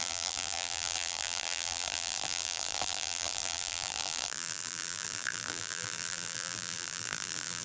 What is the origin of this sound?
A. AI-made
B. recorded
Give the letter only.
A